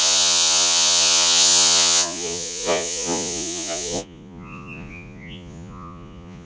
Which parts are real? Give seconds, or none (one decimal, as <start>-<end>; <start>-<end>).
none